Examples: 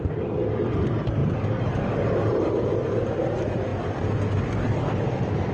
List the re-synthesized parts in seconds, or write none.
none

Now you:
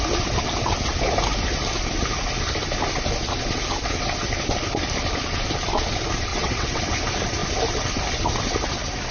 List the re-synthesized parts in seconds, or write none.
6.3-6.8

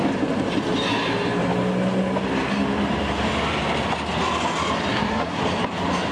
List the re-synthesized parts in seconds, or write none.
4.9-5.4

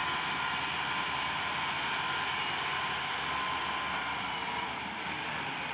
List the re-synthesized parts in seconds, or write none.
none

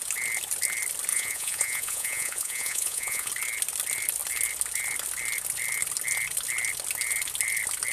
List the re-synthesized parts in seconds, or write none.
1.1-3.3